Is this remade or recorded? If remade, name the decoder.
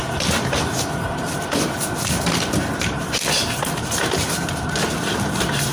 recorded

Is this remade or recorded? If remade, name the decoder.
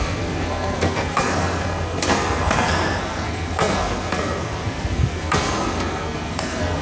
remade, codec, SNAC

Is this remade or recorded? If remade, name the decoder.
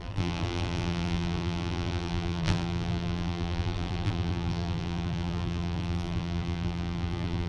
remade, vocoder, BigVGAN v2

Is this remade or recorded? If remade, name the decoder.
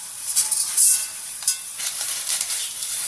remade, vocoder, BigVGAN v2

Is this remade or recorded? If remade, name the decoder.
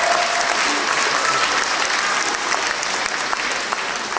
recorded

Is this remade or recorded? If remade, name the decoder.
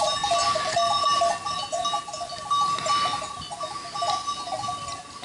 recorded